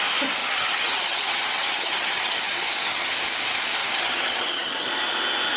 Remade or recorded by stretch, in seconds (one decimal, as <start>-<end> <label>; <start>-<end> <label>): 0.0-0.4 recorded; 0.4-3.1 remade; 3.1-3.8 recorded; 3.8-4.9 remade; 4.9-5.6 recorded